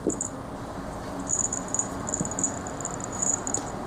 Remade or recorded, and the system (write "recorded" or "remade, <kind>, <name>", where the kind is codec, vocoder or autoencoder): recorded